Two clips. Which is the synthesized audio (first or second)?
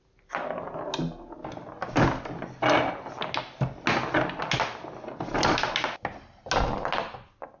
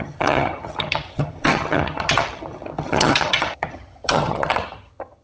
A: second